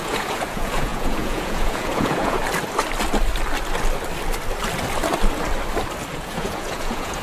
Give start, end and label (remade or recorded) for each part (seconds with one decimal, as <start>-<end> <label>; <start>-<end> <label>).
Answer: 0.0-2.4 remade; 2.4-6.1 recorded; 6.1-7.2 remade